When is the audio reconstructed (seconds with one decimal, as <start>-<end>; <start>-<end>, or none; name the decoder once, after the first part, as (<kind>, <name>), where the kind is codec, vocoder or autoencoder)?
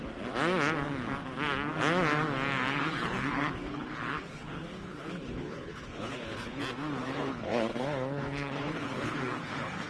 2.7-6.6 (codec, HILCodec); 7.0-9.9